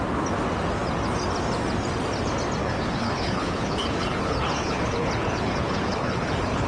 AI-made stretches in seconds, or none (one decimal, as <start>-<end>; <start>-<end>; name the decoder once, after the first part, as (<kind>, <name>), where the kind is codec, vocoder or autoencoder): 2.6-6.7 (codec, HILCodec)